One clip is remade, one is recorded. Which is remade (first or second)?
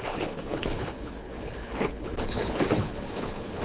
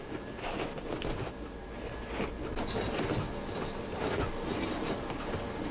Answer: first